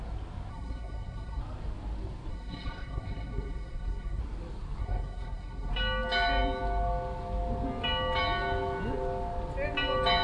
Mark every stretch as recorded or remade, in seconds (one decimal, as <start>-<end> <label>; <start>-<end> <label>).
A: 0.0-0.5 recorded; 0.5-1.4 remade; 1.4-2.3 recorded; 2.3-4.2 remade; 4.2-4.8 recorded; 4.8-5.7 remade; 5.7-10.2 recorded